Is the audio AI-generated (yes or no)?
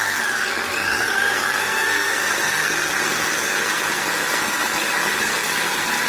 yes